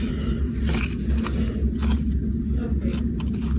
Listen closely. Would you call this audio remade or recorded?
recorded